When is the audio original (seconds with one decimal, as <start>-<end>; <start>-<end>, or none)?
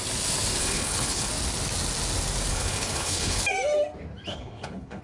0.0-0.6; 1.3-2.5; 3.4-4.3